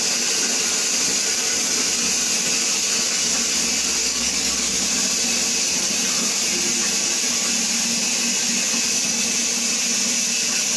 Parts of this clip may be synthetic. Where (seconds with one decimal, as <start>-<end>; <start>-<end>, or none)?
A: 4.0-4.8